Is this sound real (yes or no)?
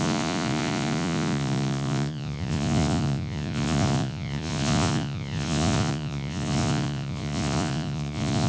no